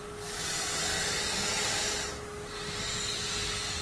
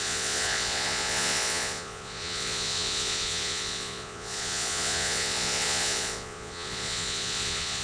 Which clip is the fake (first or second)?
second